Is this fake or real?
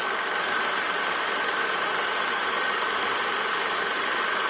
real